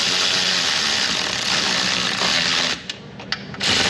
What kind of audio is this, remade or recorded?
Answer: recorded